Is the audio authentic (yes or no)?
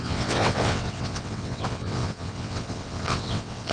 no